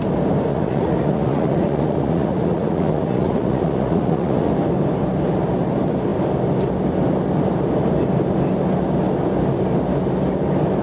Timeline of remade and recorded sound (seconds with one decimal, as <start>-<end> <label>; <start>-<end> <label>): 0.0-0.5 recorded; 0.5-4.5 remade; 4.5-10.8 recorded